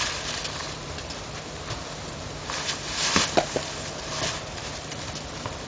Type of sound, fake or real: fake